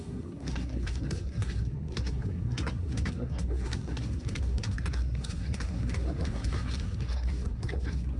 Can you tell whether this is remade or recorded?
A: remade